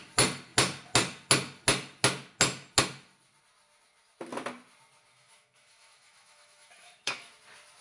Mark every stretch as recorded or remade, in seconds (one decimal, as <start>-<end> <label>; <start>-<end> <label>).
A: 0.0-5.1 recorded; 5.1-7.3 remade; 7.3-7.8 recorded